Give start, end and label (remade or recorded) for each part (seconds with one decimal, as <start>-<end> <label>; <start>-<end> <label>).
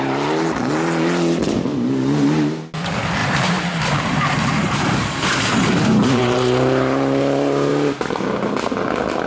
0.0-3.2 recorded; 3.2-7.2 remade; 7.2-9.3 recorded